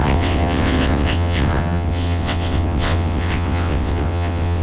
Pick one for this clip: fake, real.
fake